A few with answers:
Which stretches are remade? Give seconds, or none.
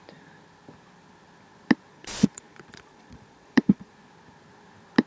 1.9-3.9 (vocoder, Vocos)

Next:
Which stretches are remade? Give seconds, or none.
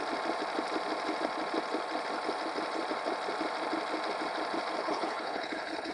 4.8-5.9 (codec, HILCodec)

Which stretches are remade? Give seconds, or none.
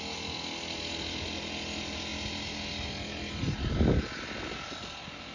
none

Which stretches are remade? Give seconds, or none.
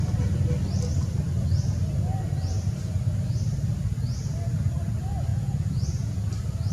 5.3-6.3 (vocoder, Vocos)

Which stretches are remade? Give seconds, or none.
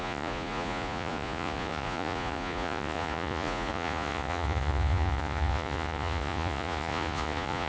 0.0-7.7 (vocoder, Vocos)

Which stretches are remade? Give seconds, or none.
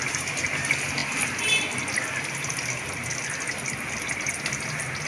none